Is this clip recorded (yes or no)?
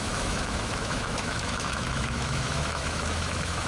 no